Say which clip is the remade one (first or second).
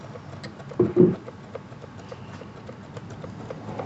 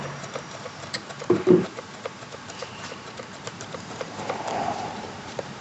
second